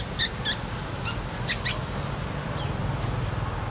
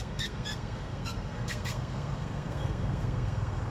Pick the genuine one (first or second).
first